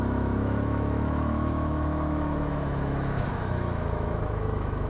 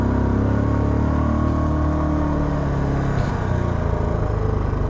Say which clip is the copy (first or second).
first